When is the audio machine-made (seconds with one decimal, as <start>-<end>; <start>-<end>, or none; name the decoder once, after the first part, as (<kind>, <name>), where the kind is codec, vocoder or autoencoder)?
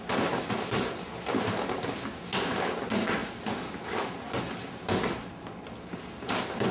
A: none